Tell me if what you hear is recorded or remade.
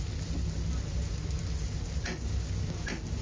recorded